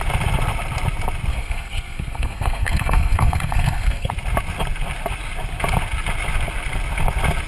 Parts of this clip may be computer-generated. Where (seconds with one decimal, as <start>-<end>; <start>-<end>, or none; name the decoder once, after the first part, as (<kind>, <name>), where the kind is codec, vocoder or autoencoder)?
1.3-4.1 (codec, SNAC)